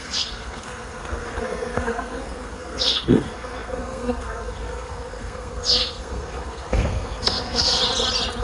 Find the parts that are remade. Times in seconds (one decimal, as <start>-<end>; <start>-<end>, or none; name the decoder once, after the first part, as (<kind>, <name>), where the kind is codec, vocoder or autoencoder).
0.0-7.8 (codec, SNAC)